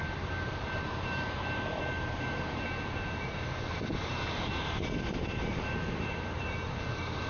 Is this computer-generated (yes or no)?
yes